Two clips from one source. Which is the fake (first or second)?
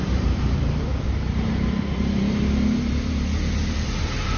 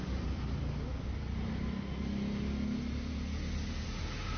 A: first